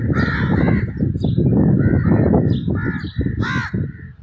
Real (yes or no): yes